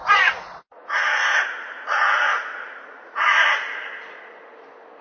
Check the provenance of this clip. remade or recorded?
remade